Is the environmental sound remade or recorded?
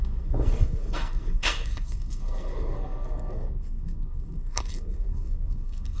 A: remade